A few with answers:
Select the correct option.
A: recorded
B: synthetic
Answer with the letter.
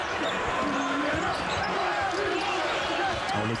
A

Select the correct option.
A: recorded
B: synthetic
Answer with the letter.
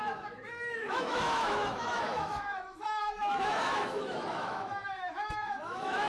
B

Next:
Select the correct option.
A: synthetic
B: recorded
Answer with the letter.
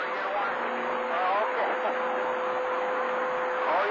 B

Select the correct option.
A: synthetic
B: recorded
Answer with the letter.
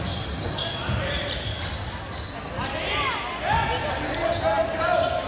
B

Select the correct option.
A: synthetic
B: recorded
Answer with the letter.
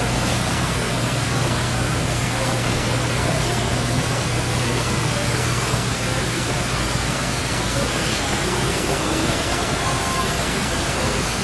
A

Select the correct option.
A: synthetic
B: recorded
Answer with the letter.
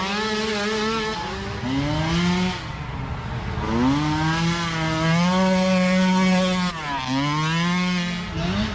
B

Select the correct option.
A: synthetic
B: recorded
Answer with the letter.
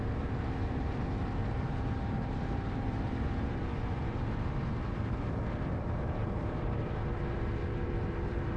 A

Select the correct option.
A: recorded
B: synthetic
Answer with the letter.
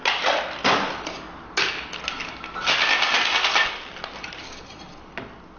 A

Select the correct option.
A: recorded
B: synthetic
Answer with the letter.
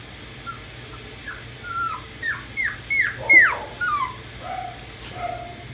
A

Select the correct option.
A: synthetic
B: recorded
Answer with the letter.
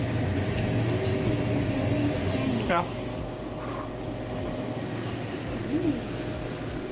B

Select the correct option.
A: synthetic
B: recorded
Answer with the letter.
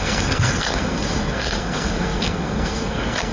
A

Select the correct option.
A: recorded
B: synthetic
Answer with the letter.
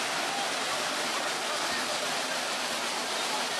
A